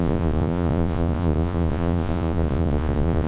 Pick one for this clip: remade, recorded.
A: remade